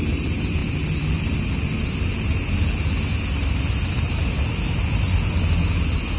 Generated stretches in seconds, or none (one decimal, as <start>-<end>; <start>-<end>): none